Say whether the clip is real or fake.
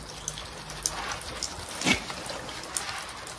real